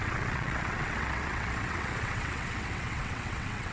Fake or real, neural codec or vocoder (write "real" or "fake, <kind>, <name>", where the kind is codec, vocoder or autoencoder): fake, vocoder, WaveNeXt